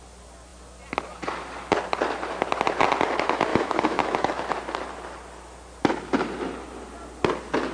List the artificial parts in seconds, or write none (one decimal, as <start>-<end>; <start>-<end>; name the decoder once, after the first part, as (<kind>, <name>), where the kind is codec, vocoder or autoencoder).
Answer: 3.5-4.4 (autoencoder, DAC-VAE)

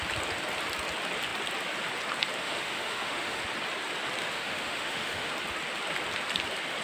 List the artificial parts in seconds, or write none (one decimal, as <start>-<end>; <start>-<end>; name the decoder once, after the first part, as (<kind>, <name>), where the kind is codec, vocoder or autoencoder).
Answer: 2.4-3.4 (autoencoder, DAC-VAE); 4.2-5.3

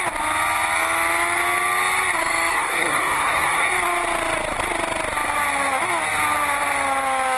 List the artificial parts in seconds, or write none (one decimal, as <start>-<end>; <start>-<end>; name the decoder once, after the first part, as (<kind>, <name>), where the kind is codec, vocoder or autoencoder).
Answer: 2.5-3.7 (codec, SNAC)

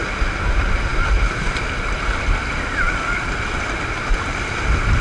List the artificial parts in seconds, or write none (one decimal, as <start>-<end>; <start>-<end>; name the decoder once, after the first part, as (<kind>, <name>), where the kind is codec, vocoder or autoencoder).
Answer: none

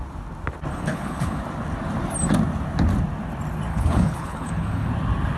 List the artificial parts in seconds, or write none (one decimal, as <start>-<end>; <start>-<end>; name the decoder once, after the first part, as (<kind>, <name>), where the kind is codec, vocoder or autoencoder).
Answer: 0.7-1.4 (codec, HILCodec); 3.7-4.9

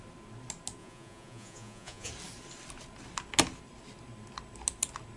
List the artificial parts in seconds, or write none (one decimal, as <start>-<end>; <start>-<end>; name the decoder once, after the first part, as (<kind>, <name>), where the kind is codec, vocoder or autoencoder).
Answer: 0.8-2.1 (vocoder, Vocos)